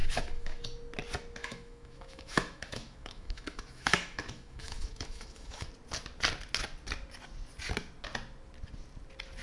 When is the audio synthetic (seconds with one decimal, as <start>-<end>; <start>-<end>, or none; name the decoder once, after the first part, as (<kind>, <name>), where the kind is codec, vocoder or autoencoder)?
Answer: 0.0-0.6 (autoencoder, DAC-VAE); 1.4-5.7